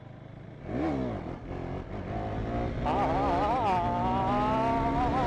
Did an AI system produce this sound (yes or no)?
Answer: no